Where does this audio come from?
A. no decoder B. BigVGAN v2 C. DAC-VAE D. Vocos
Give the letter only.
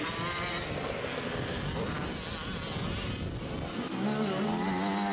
A